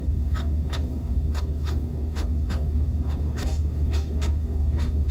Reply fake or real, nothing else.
fake